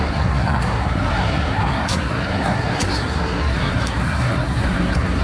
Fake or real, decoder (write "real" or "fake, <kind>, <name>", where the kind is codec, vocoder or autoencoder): fake, codec, SNAC